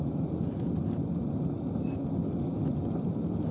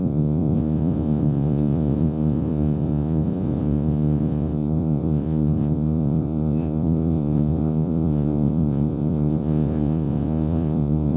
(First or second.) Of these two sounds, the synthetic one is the second